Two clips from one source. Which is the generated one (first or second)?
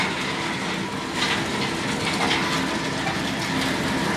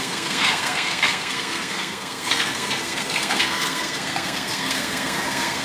second